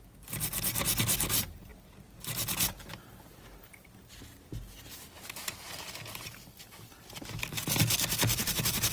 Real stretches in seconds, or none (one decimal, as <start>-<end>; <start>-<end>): 0.0-8.9